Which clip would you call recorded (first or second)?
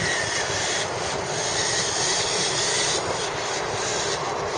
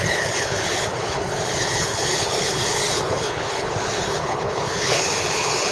first